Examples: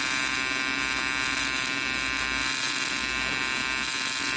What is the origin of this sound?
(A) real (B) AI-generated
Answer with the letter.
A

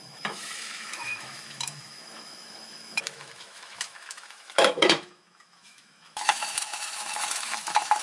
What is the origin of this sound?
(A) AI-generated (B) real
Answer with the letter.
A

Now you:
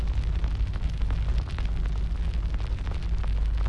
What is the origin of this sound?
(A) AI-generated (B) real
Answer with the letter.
B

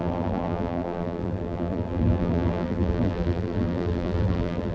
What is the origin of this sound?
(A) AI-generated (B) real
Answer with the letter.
A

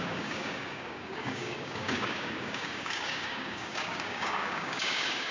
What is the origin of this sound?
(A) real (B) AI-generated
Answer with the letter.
B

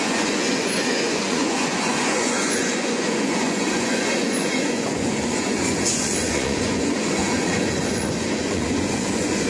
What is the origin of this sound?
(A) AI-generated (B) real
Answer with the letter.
A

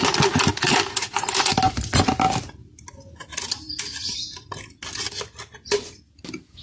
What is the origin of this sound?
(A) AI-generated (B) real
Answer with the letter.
B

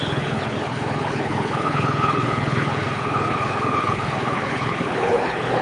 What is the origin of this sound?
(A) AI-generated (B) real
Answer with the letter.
A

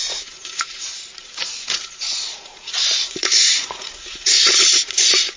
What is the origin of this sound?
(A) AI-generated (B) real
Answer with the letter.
A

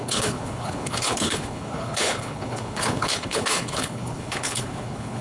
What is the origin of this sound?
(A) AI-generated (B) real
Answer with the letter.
A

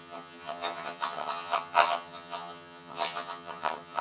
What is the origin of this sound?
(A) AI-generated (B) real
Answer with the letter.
A